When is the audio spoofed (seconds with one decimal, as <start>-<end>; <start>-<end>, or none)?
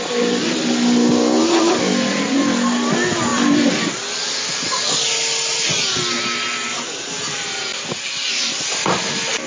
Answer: none